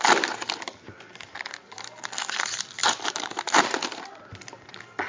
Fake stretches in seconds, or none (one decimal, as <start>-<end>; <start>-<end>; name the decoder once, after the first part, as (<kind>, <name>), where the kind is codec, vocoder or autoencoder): 2.8-3.8 (vocoder, BigVGAN v2)